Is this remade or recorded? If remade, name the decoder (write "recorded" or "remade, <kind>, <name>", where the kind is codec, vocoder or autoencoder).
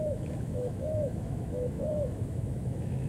remade, autoencoder, DAC-VAE